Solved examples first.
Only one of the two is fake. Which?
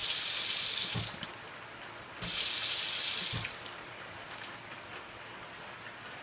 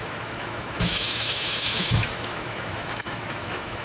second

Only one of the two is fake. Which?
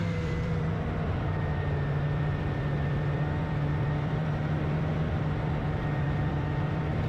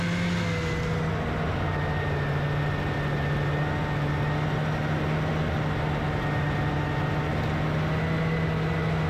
first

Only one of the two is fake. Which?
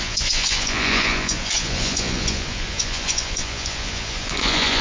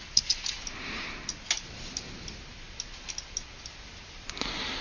first